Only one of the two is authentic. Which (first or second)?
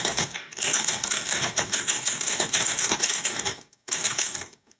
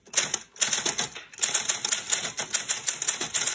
second